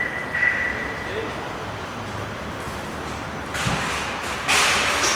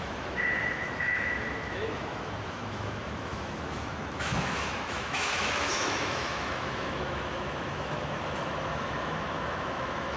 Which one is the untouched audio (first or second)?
first